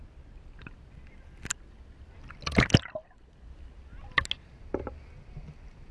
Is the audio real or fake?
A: real